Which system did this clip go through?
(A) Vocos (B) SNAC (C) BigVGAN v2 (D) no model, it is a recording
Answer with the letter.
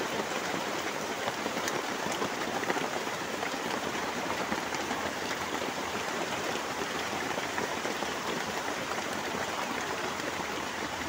C